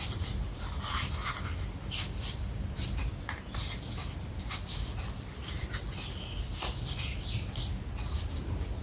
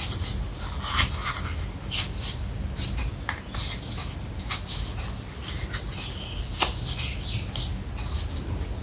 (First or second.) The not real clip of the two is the first